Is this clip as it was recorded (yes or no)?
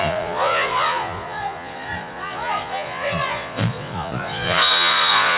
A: no